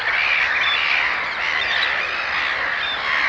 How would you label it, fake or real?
real